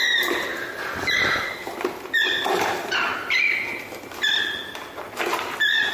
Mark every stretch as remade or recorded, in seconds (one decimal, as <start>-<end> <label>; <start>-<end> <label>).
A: 0.0-3.1 remade; 3.1-4.9 recorded; 4.9-5.9 remade